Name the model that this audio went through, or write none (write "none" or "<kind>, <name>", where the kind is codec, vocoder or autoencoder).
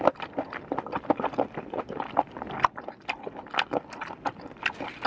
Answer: none